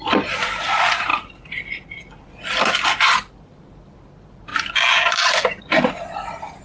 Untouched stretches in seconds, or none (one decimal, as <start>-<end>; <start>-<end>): 0.0-6.6